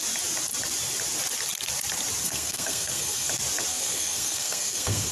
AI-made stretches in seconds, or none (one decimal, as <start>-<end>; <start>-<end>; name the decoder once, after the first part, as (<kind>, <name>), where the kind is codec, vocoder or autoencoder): 2.2-3.3 (codec, SNAC); 3.7-5.1